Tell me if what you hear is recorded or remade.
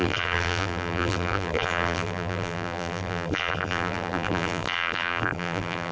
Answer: remade